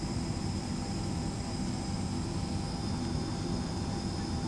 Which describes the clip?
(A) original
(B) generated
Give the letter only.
A